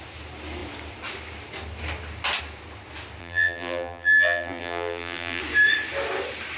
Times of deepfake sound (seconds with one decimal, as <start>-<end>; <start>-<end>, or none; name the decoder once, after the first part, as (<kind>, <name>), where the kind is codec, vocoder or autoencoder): 3.2-5.4 (vocoder, BigVGAN v2)